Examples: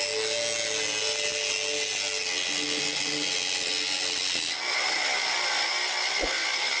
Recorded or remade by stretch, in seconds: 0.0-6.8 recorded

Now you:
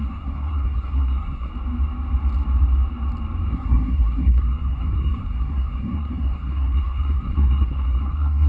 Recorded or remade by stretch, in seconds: 0.0-1.5 remade; 1.5-3.5 recorded; 3.5-8.5 remade

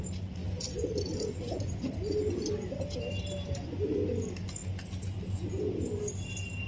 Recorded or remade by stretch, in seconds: 0.0-0.4 recorded; 0.4-2.5 remade; 2.5-6.7 recorded